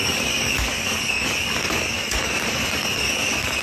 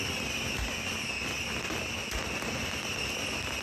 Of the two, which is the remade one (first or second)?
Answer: first